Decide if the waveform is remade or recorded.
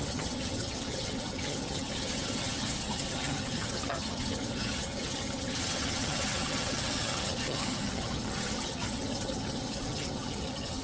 remade